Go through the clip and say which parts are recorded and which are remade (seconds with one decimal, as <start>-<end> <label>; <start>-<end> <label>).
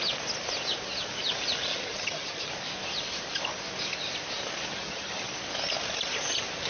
0.0-1.7 recorded; 1.7-2.5 remade; 2.5-4.7 recorded; 4.7-5.3 remade; 5.3-6.7 recorded